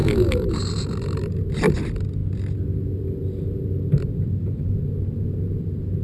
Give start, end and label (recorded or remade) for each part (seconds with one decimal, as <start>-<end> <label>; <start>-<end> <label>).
0.0-0.5 remade; 0.5-6.0 recorded